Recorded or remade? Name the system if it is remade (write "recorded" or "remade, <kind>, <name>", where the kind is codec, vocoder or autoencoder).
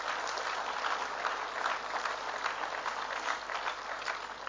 remade, vocoder, BigVGAN v2